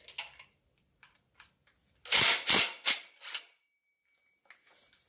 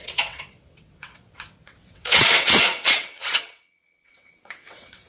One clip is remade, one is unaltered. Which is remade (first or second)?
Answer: second